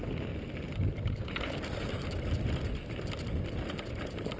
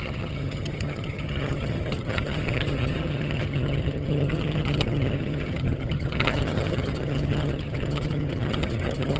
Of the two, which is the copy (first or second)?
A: second